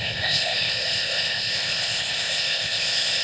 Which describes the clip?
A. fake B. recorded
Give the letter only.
A